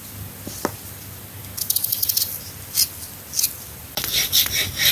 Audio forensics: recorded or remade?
recorded